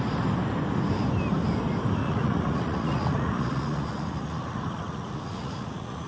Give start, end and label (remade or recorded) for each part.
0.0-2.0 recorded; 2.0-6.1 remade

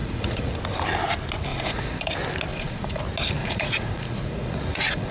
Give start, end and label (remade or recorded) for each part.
0.0-0.5 remade; 0.5-1.5 recorded; 1.5-2.1 remade; 2.1-2.5 recorded; 2.5-3.0 remade; 3.0-3.4 recorded; 3.4-5.1 remade

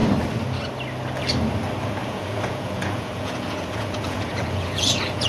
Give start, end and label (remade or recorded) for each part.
0.0-2.0 recorded; 2.0-5.3 remade

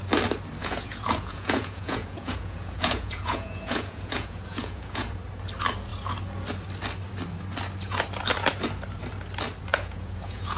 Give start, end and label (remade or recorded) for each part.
0.0-0.6 recorded; 0.6-5.2 remade; 5.2-9.7 recorded; 9.7-10.6 remade

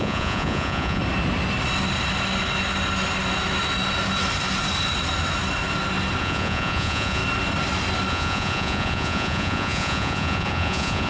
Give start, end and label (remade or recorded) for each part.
0.0-1.0 remade; 1.0-6.2 recorded; 6.2-7.2 remade; 7.2-8.1 recorded; 8.1-11.1 remade

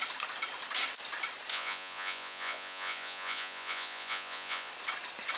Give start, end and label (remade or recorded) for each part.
0.0-1.5 recorded; 1.5-4.7 remade; 4.7-5.4 recorded

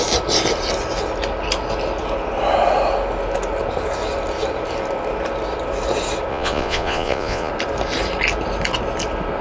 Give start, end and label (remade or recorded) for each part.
0.0-6.3 recorded; 6.3-7.5 remade; 7.5-9.4 recorded

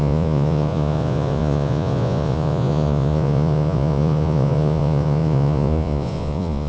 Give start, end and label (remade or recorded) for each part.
0.0-6.7 remade